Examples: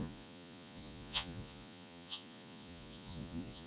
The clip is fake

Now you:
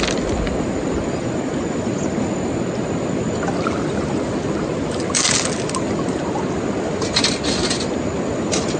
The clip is real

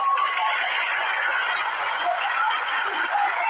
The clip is fake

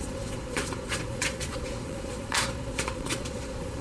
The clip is fake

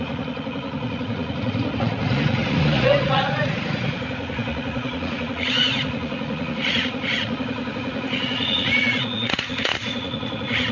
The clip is fake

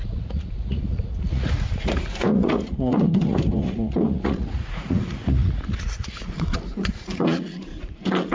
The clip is fake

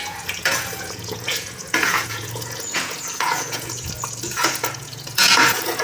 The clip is fake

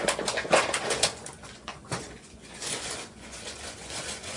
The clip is fake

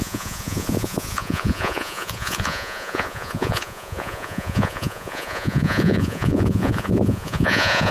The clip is fake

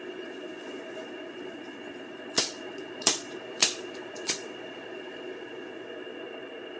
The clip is fake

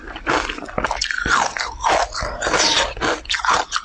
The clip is real